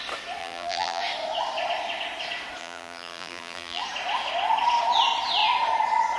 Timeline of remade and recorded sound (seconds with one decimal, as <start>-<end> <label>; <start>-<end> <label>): 0.0-0.4 recorded; 0.4-1.0 remade; 1.0-2.6 recorded; 2.6-3.8 remade; 3.8-6.2 recorded